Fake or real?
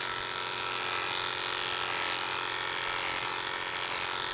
real